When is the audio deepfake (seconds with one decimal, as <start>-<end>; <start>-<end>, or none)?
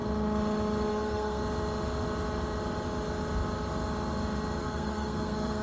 0.9-1.4; 4.6-5.6